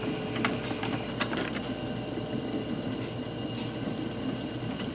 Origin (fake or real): real